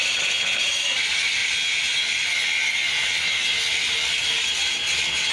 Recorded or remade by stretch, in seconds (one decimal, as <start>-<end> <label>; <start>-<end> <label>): 0.0-5.3 recorded